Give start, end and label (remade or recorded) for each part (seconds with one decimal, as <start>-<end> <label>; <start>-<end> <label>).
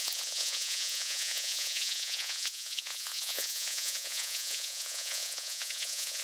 0.0-6.2 remade